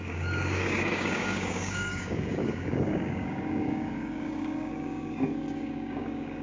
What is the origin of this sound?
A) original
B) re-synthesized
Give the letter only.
B